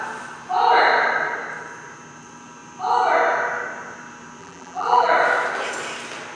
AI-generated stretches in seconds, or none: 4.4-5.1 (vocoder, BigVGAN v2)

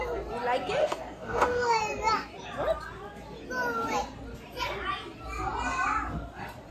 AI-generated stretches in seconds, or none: 0.8-1.8 (codec, DAC)

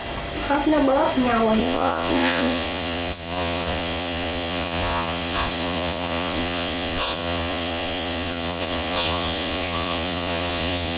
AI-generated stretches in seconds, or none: 1.6-11.0 (vocoder, Vocos)

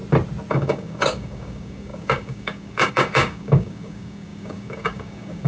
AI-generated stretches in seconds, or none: 0.5-5.5 (codec, DAC)